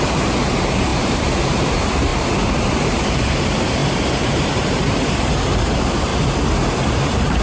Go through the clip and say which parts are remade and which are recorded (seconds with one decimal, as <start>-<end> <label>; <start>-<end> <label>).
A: 0.0-6.1 remade; 6.1-6.9 recorded; 6.9-7.4 remade